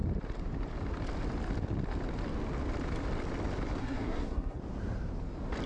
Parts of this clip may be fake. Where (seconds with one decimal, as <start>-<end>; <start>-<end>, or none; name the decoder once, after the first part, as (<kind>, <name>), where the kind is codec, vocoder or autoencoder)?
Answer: 3.8-4.6 (codec, SNAC)